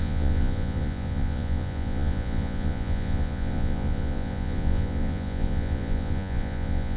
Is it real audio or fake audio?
fake